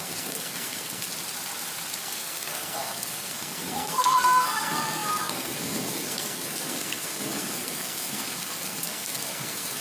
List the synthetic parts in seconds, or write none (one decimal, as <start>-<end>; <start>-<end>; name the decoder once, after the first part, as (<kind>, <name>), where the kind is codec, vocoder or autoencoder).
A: 0.0-1.1 (codec, SNAC); 2.0-9.8